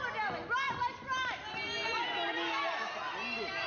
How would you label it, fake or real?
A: real